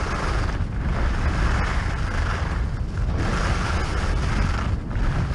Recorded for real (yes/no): yes